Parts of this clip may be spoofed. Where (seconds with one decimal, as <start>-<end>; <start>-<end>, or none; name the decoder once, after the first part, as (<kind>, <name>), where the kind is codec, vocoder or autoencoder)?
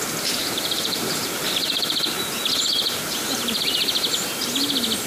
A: 0.4-2.0 (vocoder, BigVGAN v2); 3.1-3.6